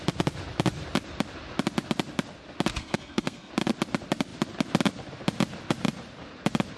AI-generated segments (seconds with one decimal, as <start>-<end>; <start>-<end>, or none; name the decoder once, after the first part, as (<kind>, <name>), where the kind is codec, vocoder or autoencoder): 2.8-3.5 (codec, SNAC)